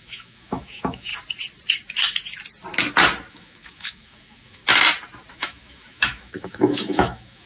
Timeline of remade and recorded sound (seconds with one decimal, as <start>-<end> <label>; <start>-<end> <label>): 0.0-1.1 remade; 1.1-3.3 recorded; 3.3-4.6 remade; 4.6-5.3 recorded; 5.3-7.5 remade

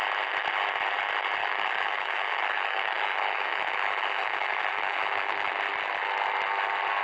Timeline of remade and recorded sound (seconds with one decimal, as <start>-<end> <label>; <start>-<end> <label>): 0.0-1.4 recorded; 1.4-5.5 remade; 5.5-7.0 recorded

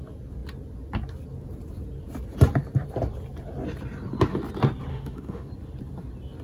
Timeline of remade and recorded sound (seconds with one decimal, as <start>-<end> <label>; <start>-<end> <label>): 0.0-4.9 recorded; 4.9-5.5 remade; 5.5-6.4 recorded

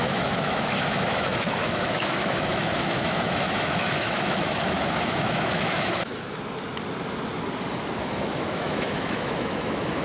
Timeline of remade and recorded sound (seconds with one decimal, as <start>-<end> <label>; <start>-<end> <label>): 0.0-6.1 remade; 6.1-8.0 recorded; 8.0-10.0 remade

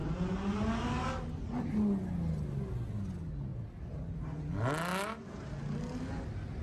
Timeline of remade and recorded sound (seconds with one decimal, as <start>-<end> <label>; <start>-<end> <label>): 0.0-6.6 recorded

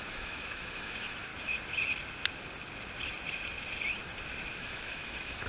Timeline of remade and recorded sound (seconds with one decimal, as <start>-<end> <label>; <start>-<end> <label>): 0.0-1.3 remade; 1.3-4.6 recorded; 4.6-5.5 remade